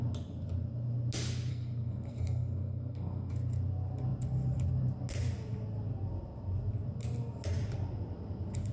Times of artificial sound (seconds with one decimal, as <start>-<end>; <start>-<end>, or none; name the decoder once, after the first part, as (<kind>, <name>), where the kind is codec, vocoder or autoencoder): 1.5-3.3 (codec, SNAC)